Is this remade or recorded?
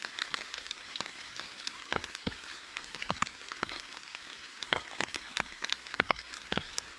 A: remade